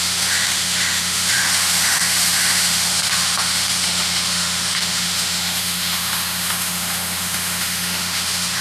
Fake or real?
fake